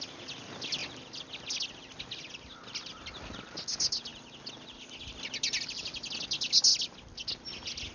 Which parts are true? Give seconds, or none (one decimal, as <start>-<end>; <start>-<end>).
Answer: 0.0-7.9